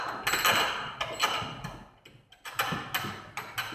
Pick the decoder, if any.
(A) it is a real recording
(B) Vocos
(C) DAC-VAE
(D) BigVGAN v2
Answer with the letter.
A